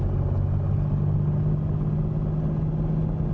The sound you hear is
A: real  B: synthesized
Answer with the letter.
A